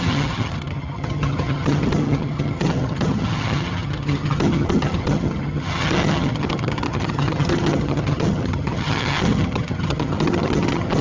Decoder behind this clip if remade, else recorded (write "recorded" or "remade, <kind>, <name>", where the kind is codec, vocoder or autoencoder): remade, vocoder, HiFi-GAN